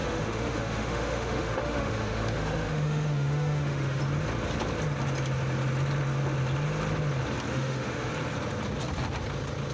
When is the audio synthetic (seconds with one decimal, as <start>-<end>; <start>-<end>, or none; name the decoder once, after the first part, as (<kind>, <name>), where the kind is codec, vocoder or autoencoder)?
0.0-4.0 (autoencoder, DAC-VAE); 7.5-8.1